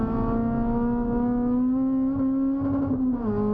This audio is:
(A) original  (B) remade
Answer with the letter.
A